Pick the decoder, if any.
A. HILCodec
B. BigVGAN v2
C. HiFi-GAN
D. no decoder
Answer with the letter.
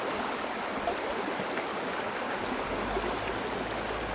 D